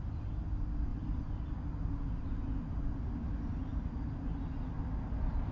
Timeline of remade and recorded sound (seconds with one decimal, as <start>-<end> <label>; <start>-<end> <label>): 0.0-5.5 recorded